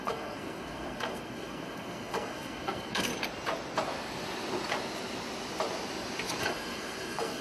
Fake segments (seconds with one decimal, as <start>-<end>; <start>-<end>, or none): 0.0-3.1; 6.4-7.4